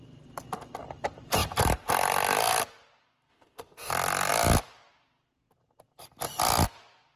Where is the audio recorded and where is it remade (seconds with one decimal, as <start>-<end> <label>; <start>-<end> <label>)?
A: 0.0-3.3 recorded; 3.3-3.9 remade; 3.9-7.2 recorded